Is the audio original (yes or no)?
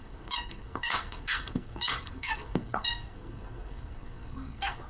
no